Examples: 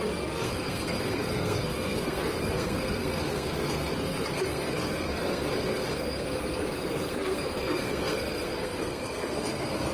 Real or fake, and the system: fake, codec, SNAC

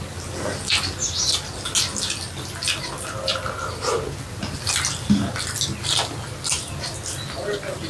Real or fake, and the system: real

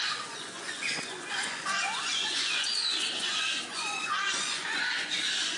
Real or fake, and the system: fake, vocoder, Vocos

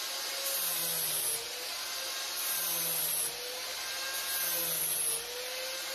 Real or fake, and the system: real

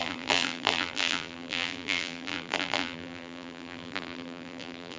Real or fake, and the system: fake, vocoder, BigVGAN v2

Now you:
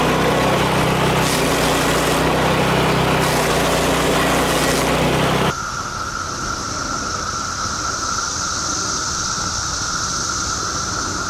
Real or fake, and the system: real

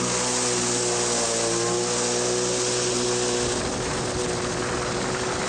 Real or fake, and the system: real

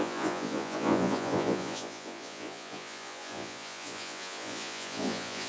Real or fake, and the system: fake, vocoder, Vocos